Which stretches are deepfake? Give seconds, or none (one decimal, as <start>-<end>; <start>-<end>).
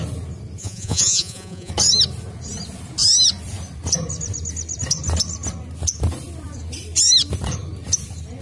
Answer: 0.6-1.7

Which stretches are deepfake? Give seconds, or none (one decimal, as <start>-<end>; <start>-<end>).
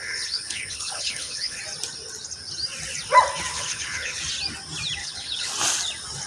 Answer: 0.0-1.6; 3.5-4.2; 5.0-5.5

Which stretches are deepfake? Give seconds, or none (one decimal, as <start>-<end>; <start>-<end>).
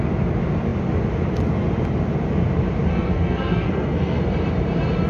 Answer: 2.9-4.2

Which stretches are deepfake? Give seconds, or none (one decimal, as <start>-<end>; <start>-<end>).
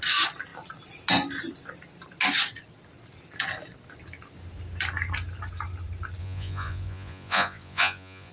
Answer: 6.2-8.3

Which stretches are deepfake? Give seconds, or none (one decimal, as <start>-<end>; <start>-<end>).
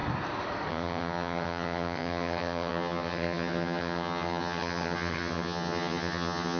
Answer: 0.7-6.6